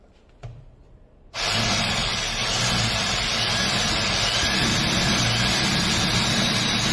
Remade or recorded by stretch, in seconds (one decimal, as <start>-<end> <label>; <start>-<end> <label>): 0.0-6.9 recorded